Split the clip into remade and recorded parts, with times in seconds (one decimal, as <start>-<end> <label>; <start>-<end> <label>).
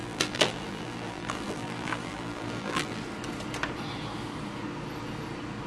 0.0-3.0 remade; 3.0-5.7 recorded